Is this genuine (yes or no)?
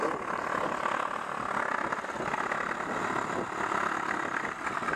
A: yes